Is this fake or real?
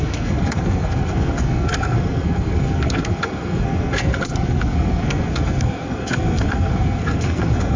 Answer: fake